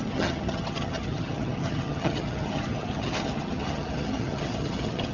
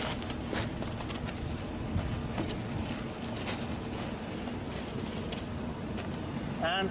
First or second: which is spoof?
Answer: first